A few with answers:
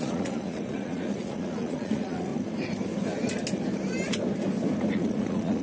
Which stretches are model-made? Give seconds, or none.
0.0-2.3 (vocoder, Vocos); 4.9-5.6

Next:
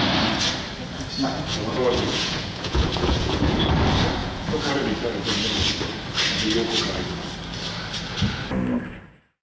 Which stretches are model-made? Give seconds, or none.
1.5-3.7 (vocoder, Vocos); 4.2-4.7

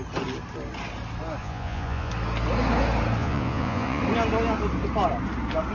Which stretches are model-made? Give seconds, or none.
1.4-2.1 (vocoder, Vocos); 3.2-4.0

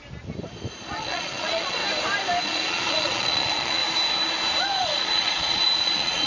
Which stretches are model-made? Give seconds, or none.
0.9-1.8 (vocoder, Vocos); 2.4-3.8; 4.6-6.3

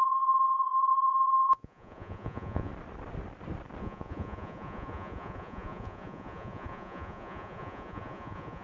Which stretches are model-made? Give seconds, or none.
0.0-2.7 (vocoder, Vocos); 3.8-8.6

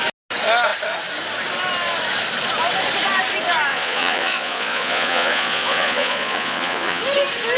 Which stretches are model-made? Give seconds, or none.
3.7-7.0 (vocoder, Vocos)

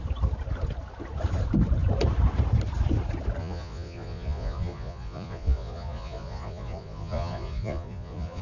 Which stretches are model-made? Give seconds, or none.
3.4-8.4 (vocoder, Vocos)